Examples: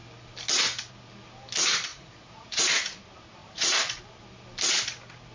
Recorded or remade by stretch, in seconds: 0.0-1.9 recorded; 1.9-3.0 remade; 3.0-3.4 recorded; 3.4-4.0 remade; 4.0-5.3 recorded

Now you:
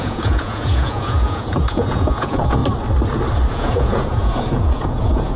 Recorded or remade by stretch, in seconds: 0.0-2.6 remade; 2.6-3.5 recorded; 3.5-5.4 remade

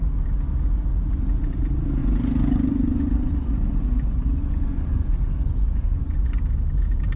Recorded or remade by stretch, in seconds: 0.0-2.0 recorded; 2.0-6.2 remade; 6.2-7.2 recorded

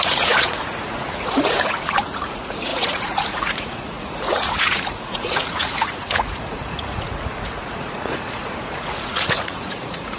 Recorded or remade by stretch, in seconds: 0.0-10.2 remade

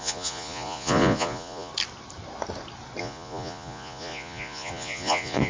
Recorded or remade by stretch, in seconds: 0.0-1.7 remade; 1.7-3.0 recorded; 3.0-5.5 remade

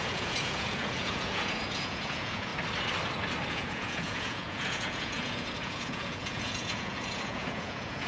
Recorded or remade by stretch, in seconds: 0.0-2.5 remade; 2.5-3.5 recorded; 3.5-8.1 remade

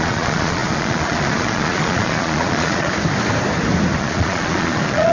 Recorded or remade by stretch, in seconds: 0.0-2.9 remade; 2.9-4.0 recorded; 4.0-5.1 remade